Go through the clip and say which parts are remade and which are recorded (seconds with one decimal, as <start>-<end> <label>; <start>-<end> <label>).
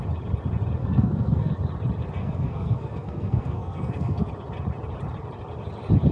0.0-0.8 recorded; 0.8-1.5 remade; 1.5-2.2 recorded; 2.2-4.3 remade; 4.3-6.1 recorded